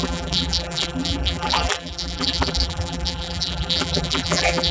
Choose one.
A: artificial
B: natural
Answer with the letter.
A